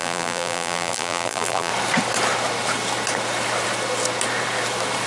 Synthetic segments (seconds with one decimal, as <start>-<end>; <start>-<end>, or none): 0.0-1.7